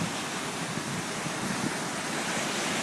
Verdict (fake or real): real